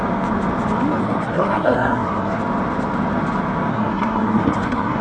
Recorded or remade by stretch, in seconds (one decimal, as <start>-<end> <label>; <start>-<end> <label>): 0.0-1.0 recorded; 1.0-2.4 remade; 2.4-3.7 recorded; 3.7-5.0 remade

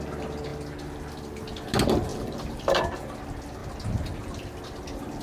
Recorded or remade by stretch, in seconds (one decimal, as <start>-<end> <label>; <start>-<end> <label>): 0.0-2.1 recorded; 2.1-2.8 remade; 2.8-5.2 recorded

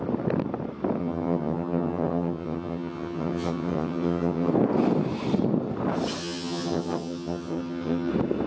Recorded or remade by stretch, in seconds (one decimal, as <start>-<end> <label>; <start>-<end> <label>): 0.0-1.0 recorded; 1.0-4.5 remade; 4.5-6.2 recorded; 6.2-8.1 remade; 8.1-8.5 recorded